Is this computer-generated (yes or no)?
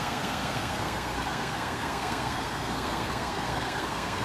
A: yes